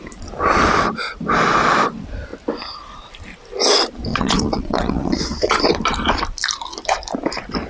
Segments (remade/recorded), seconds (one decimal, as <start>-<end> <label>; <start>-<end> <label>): 0.0-4.1 recorded; 4.1-5.6 remade; 5.6-7.7 recorded